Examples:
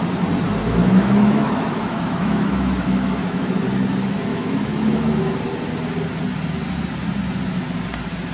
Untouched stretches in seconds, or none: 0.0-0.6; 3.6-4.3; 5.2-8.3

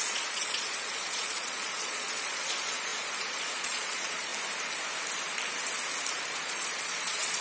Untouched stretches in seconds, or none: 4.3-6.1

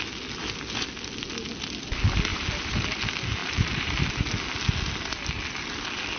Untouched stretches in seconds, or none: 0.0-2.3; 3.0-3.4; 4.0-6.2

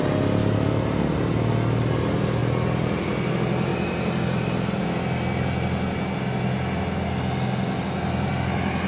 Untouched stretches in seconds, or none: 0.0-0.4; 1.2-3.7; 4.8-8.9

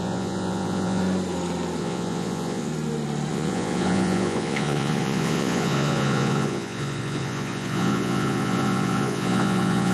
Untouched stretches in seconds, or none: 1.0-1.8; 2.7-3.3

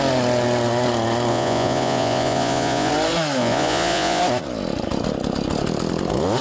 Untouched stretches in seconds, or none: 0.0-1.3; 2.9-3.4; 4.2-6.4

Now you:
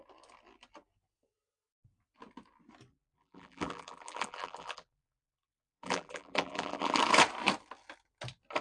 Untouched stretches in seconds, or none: 0.0-2.9; 7.0-8.6

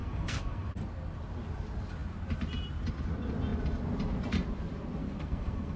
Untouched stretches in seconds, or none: 0.7-5.0